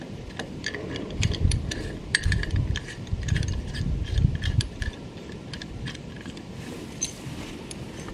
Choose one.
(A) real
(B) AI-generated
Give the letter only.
B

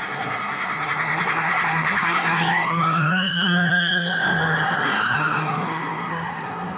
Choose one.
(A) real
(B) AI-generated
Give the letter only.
B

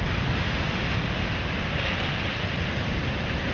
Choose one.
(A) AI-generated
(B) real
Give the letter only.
B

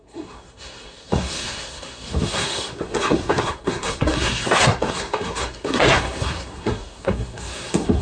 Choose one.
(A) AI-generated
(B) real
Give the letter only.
A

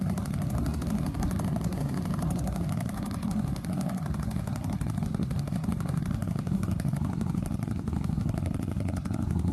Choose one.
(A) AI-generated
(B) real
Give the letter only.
A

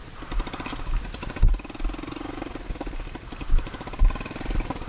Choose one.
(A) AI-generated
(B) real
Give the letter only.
B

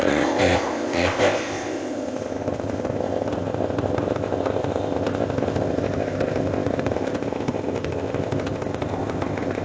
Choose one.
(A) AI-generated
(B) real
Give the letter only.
A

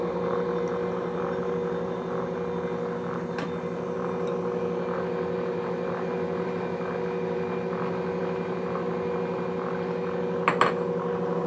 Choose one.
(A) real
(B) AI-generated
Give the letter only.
A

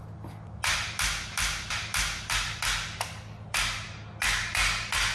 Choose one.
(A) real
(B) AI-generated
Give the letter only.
A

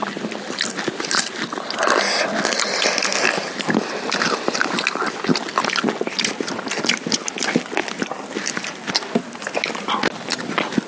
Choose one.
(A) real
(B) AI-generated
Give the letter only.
A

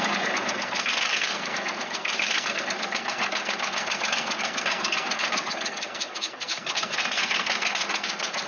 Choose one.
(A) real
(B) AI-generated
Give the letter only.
B